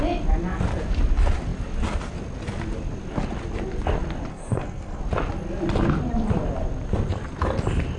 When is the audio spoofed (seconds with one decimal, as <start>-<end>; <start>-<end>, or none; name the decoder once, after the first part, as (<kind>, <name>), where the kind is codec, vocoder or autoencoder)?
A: 4.3-5.0 (codec, SNAC)